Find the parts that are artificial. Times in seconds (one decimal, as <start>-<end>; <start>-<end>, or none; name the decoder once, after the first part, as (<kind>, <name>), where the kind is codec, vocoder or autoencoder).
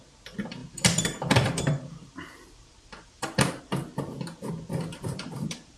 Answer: 0.6-3.6 (vocoder, BigVGAN v2); 4.9-5.8